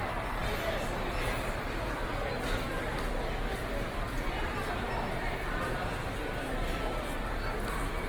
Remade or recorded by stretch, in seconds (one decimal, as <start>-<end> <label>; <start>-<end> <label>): 0.0-3.5 recorded; 3.5-4.9 remade; 4.9-8.1 recorded